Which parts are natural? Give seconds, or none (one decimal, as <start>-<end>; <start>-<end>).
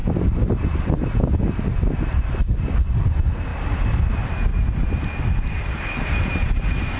4.5-5.8